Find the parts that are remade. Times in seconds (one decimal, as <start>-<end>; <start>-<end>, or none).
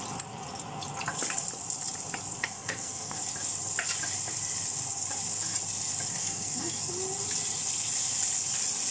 2.4-3.2; 6.2-6.9